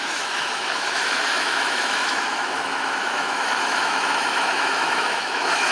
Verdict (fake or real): fake